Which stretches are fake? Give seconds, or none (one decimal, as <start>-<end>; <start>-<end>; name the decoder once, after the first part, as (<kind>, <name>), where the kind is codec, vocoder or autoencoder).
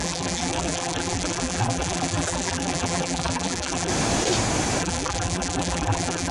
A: 0.0-3.9 (vocoder, BigVGAN v2); 4.8-6.3